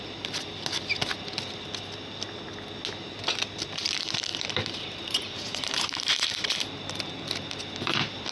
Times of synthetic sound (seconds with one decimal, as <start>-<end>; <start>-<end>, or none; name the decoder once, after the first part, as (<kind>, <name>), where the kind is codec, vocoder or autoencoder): 4.3-6.9 (vocoder, BigVGAN v2)